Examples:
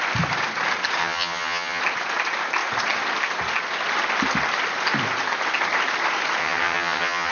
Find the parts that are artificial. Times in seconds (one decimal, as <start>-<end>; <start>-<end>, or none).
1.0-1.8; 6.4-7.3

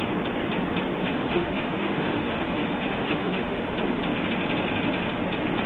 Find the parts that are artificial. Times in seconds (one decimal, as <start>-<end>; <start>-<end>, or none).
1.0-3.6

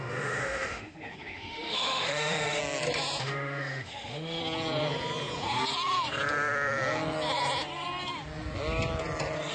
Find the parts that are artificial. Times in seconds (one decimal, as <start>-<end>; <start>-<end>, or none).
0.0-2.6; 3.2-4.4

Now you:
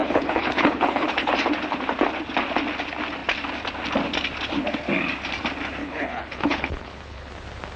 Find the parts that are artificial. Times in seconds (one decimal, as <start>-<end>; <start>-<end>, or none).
0.0-1.3; 5.8-7.3

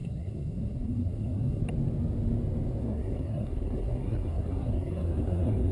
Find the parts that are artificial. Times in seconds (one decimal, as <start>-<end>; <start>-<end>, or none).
0.0-1.6; 2.8-5.7

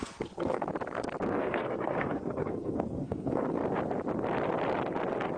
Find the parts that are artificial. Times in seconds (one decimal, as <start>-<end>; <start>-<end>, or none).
0.0-0.7; 1.3-3.6